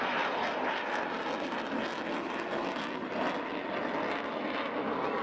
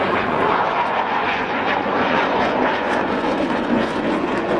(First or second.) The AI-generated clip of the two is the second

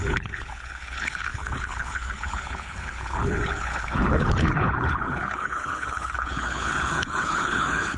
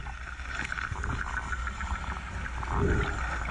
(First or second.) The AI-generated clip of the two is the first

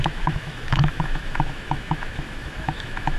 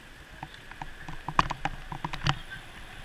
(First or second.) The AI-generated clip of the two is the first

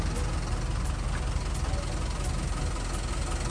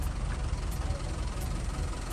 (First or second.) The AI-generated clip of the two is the second